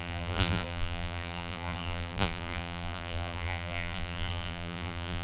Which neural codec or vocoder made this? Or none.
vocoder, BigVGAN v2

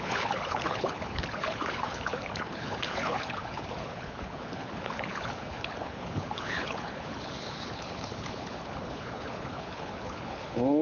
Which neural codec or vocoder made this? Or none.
codec, HILCodec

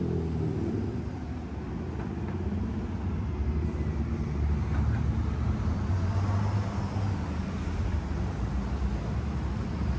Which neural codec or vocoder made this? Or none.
none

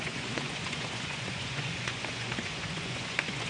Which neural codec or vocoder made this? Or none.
vocoder, Vocos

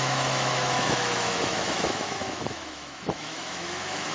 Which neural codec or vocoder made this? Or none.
autoencoder, DAC-VAE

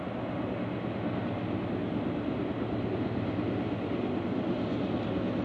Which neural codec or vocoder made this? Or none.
none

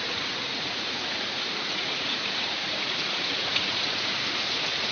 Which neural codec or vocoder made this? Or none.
vocoder, Vocos